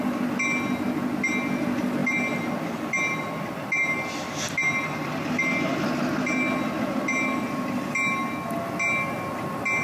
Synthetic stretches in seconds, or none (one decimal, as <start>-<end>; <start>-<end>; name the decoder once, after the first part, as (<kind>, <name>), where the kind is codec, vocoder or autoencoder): none